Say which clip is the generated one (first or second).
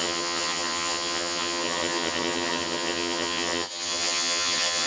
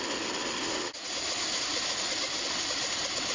first